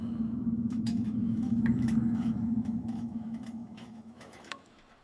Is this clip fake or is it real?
fake